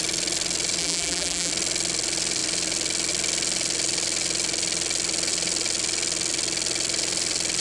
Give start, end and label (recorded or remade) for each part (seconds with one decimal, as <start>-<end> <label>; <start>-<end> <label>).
0.0-0.8 recorded; 0.8-1.5 remade; 1.5-7.6 recorded